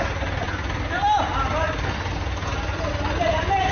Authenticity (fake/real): real